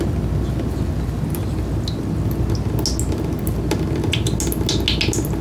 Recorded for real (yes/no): yes